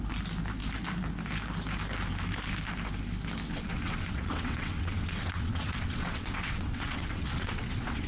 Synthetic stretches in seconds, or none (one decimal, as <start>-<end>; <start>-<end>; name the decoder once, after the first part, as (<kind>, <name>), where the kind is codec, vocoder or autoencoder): 3.5-8.1 (vocoder, WaveNeXt)